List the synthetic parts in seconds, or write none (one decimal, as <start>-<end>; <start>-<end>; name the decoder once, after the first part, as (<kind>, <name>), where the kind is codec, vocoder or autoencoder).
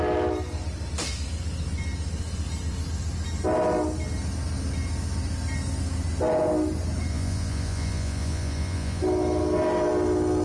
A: 7.1-9.0 (vocoder, Vocos)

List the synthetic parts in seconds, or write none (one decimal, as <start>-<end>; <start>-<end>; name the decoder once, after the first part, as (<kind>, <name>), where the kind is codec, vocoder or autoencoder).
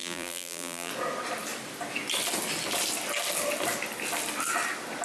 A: 0.0-0.9 (vocoder, BigVGAN v2)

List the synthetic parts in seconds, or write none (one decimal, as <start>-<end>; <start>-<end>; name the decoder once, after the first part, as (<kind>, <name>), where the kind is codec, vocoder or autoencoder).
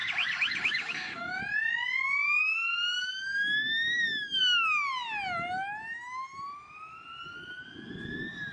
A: 0.0-1.4 (codec, DAC); 3.0-4.4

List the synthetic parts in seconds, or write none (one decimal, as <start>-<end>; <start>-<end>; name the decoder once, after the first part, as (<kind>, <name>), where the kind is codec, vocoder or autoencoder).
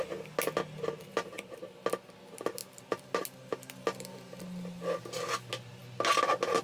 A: none